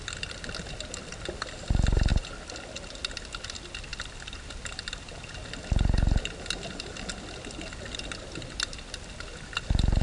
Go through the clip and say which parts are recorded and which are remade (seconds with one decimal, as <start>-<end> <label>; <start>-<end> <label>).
0.0-10.0 recorded